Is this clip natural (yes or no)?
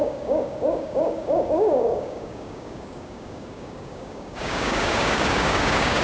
no